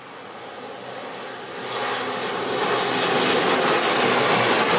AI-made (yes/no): no